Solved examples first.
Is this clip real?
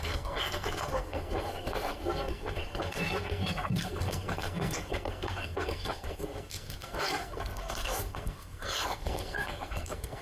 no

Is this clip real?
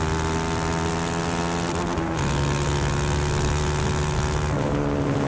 yes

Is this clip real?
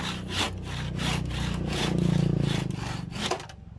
yes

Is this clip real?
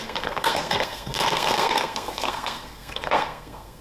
no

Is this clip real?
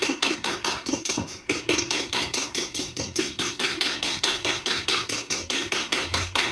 no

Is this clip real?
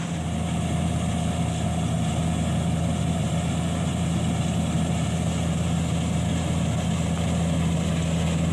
yes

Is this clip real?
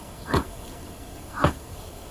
no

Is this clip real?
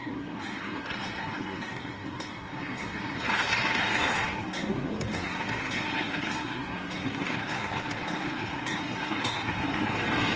no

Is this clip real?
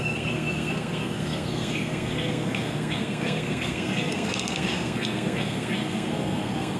no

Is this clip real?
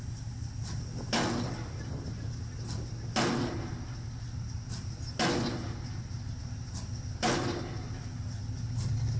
yes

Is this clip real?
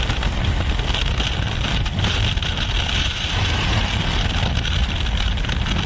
yes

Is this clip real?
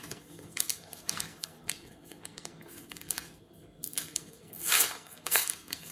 no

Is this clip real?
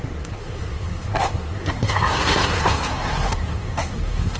no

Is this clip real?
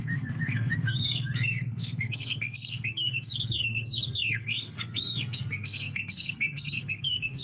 no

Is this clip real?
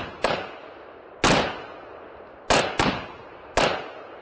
yes